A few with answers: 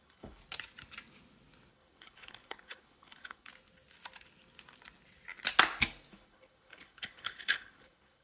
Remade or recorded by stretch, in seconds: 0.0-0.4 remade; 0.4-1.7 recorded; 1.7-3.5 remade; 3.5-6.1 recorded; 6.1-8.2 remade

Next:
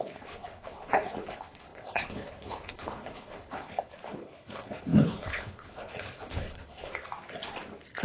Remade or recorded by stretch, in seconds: 0.0-7.1 remade; 7.1-8.0 recorded

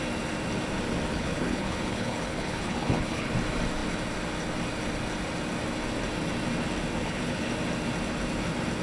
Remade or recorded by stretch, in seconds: 0.0-1.1 recorded; 1.1-3.3 remade; 3.3-7.0 recorded; 7.0-7.5 remade; 7.5-8.8 recorded

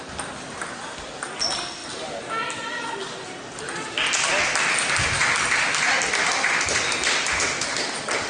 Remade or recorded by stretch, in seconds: 0.0-8.3 recorded

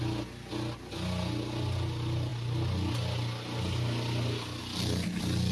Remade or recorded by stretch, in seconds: 0.0-5.5 recorded

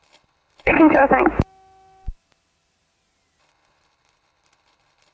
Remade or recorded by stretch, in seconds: 0.0-1.0 remade; 1.0-3.4 recorded; 3.4-5.1 remade

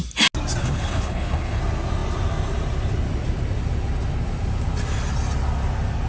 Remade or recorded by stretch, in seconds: 0.0-0.6 recorded; 0.6-1.6 remade; 1.6-6.1 recorded